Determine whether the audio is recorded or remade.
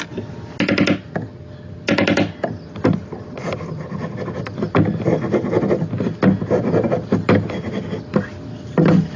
recorded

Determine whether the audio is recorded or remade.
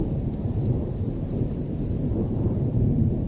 remade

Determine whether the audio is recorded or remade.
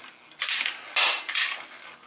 recorded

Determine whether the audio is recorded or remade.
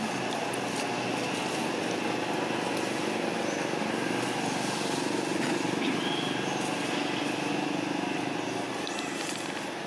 recorded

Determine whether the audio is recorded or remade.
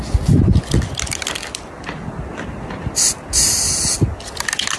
recorded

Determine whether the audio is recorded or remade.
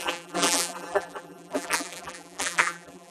remade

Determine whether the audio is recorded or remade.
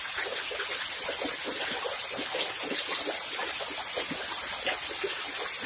recorded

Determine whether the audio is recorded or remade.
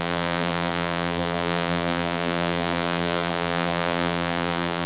remade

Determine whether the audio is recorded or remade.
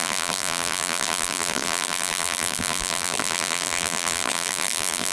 remade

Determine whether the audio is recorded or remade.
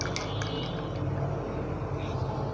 recorded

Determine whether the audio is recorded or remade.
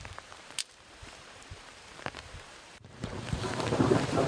remade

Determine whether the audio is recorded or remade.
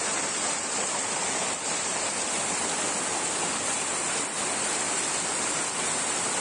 recorded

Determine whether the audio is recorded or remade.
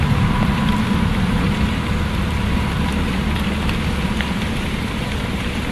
remade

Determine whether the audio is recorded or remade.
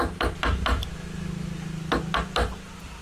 recorded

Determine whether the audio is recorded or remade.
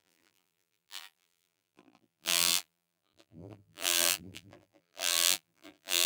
remade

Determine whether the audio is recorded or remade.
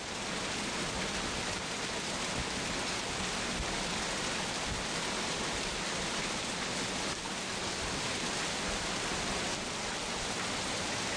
recorded